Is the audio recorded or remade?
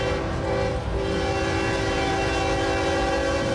recorded